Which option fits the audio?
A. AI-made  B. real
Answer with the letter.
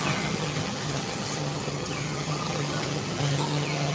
A